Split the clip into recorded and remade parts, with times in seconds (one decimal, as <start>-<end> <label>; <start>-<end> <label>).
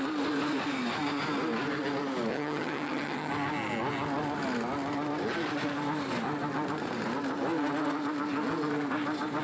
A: 0.0-2.3 recorded; 2.3-3.3 remade; 3.3-9.4 recorded